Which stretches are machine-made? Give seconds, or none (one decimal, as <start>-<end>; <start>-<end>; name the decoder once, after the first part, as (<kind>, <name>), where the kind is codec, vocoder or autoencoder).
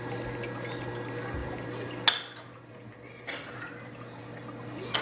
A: none